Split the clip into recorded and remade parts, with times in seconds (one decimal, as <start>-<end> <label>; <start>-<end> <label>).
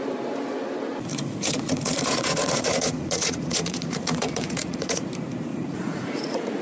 0.0-1.1 recorded; 1.1-5.1 remade; 5.1-5.5 recorded; 5.5-6.6 remade